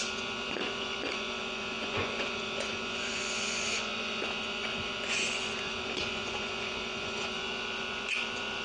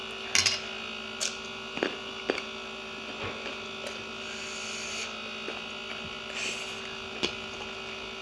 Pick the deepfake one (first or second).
first